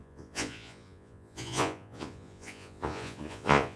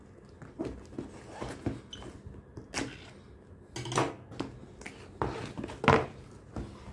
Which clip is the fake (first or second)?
first